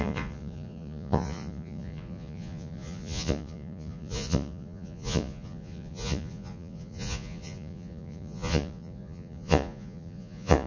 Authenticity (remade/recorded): remade